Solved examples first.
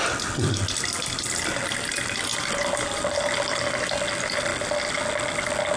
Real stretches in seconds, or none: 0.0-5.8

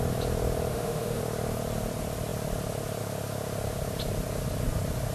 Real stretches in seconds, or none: 0.0-0.7; 1.2-5.1

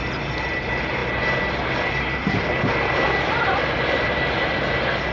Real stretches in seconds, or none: 0.0-5.1

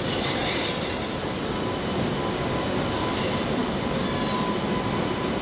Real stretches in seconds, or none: 0.0-5.4

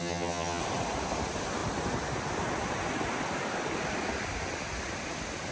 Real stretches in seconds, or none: 0.6-5.5

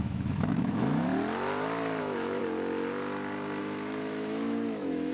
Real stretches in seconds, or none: 1.1-2.0; 2.4-3.6

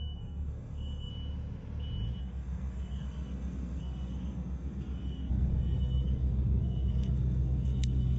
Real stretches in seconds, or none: 1.1-2.2

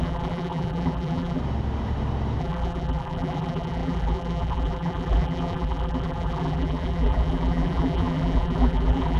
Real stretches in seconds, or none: 1.4-2.4